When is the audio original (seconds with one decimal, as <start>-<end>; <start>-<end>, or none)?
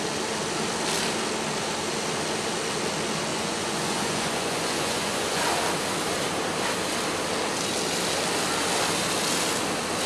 0.0-3.3; 5.5-10.1